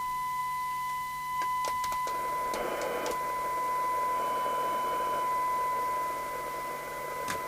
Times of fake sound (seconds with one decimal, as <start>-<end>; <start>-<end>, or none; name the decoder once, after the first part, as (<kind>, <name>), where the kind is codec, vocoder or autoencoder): none